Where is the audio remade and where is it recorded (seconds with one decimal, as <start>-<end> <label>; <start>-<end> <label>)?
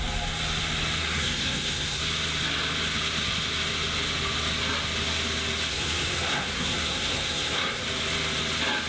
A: 0.0-1.0 recorded; 1.0-2.0 remade; 2.0-5.7 recorded; 5.7-7.8 remade; 7.8-8.9 recorded